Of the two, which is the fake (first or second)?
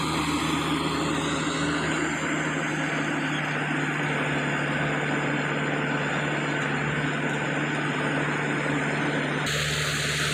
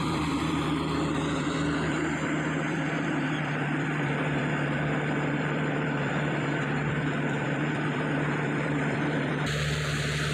second